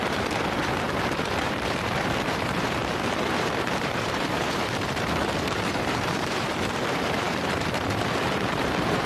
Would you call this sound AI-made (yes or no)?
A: yes